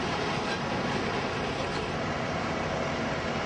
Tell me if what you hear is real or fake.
real